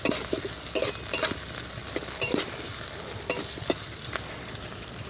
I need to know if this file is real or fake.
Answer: fake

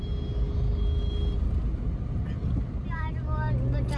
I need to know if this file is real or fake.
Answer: real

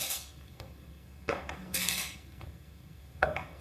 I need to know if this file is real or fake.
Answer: fake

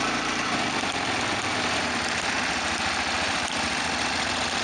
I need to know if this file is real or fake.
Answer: real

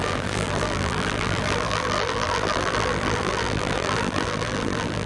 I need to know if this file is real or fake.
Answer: fake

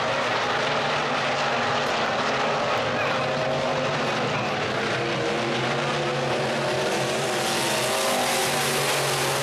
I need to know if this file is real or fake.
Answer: real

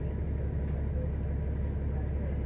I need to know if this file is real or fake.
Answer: real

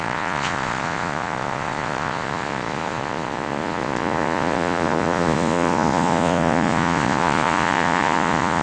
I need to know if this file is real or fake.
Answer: fake